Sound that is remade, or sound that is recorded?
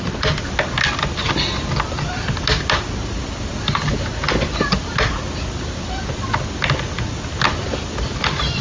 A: recorded